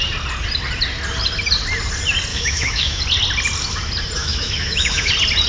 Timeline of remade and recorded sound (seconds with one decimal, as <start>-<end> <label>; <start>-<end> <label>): 0.0-2.3 recorded; 2.3-3.0 remade; 3.0-4.2 recorded; 4.2-5.1 remade; 5.1-5.5 recorded